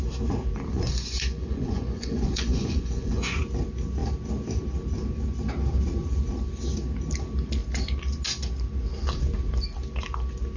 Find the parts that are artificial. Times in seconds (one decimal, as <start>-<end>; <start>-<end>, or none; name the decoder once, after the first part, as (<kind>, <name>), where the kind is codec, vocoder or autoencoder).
0.7-3.4 (vocoder, Vocos)